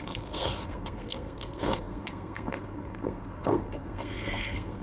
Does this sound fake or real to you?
fake